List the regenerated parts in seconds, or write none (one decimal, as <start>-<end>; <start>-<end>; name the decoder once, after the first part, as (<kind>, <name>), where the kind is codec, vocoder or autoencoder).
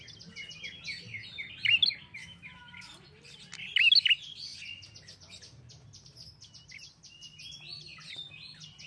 2.2-2.9 (autoencoder, DAC-VAE)